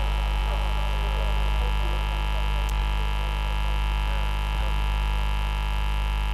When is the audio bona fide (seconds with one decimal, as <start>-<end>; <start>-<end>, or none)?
0.0-6.3